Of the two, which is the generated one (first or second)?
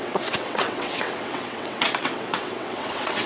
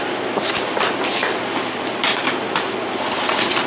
first